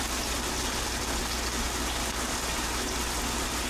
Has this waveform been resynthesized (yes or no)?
no